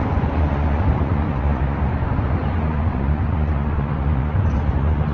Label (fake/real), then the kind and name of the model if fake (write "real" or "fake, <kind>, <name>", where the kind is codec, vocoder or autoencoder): fake, vocoder, Vocos